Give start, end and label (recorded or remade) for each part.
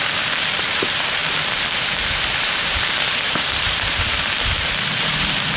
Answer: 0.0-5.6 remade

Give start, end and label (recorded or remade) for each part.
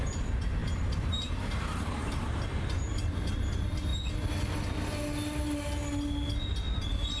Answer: 0.0-3.9 remade; 3.9-7.2 recorded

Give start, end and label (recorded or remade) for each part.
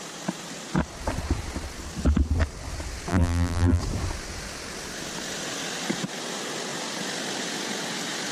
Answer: 0.0-3.1 recorded; 3.1-3.8 remade; 3.8-8.3 recorded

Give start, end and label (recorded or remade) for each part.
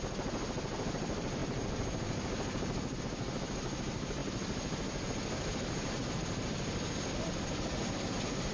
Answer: 0.0-4.2 recorded; 4.2-8.1 remade; 8.1-8.5 recorded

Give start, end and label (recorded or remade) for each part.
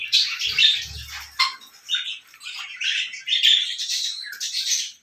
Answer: 0.0-0.6 remade; 0.6-1.9 recorded; 1.9-5.0 remade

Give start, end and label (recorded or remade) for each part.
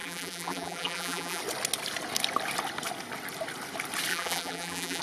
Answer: 0.0-1.4 remade; 1.4-4.1 recorded; 4.1-5.0 remade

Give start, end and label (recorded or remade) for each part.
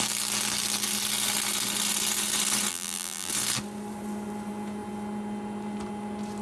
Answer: 0.0-2.7 recorded; 2.7-3.3 remade; 3.3-6.4 recorded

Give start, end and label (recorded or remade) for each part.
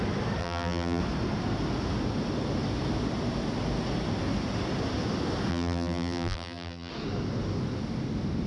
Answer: 0.0-0.4 recorded; 0.4-1.0 remade; 1.0-5.5 recorded; 5.5-6.9 remade; 6.9-8.5 recorded